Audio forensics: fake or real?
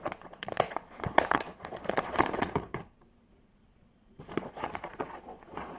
fake